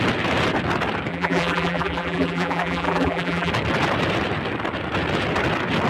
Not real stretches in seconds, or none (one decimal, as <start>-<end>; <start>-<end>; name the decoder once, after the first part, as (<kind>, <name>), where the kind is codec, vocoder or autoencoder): 1.1-3.5 (vocoder, BigVGAN v2)